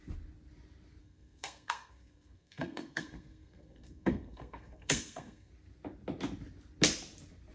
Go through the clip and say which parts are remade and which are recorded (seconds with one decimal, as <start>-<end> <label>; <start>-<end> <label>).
0.0-1.0 recorded; 1.0-5.5 remade; 5.5-7.5 recorded